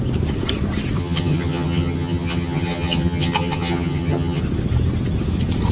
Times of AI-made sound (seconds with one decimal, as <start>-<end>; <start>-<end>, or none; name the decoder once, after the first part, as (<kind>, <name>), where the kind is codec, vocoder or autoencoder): 1.0-4.4 (vocoder, HiFi-GAN)